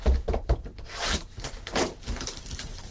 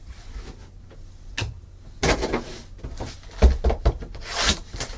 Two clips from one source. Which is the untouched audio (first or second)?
second